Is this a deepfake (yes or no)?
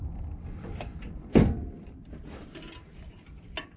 no